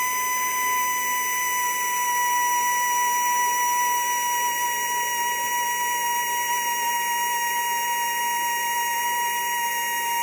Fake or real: real